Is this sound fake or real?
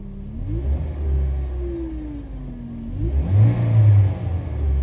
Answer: real